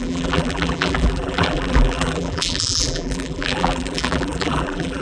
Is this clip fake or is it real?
fake